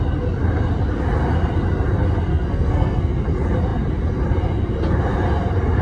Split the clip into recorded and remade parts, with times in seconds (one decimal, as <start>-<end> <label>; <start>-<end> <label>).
0.0-2.3 recorded; 2.3-3.1 remade; 3.1-5.8 recorded